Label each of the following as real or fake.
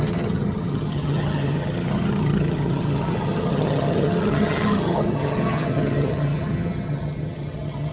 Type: fake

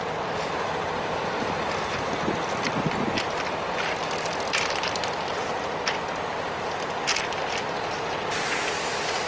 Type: real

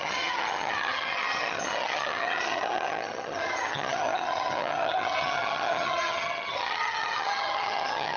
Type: fake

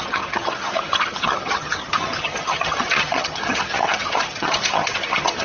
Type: fake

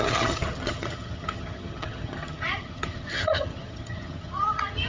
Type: fake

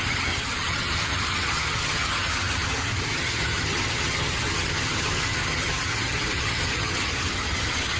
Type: fake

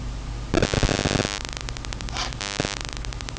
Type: real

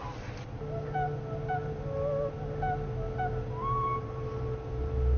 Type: real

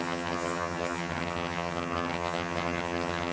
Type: fake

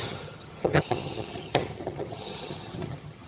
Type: fake